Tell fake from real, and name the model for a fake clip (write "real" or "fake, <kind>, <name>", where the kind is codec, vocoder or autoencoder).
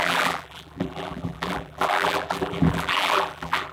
fake, vocoder, BigVGAN v2